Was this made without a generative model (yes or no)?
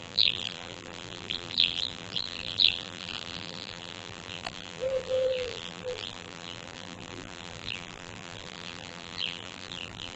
no